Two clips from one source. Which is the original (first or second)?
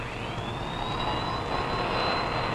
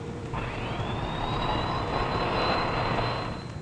first